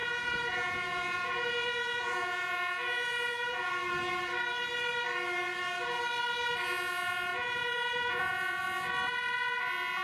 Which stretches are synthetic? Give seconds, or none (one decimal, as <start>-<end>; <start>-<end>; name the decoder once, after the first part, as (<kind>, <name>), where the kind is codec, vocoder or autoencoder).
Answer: 0.0-3.7 (vocoder, Vocos); 7.3-8.6